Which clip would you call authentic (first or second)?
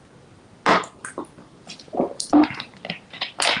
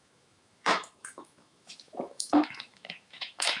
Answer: first